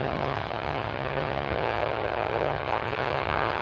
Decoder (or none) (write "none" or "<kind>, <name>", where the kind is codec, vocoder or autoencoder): vocoder, HiFi-GAN